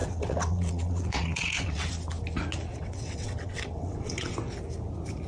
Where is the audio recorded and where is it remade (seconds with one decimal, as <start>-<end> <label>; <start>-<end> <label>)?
0.0-1.9 remade; 1.9-2.7 recorded; 2.7-4.3 remade; 4.3-5.3 recorded